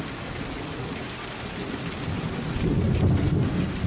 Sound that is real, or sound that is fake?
real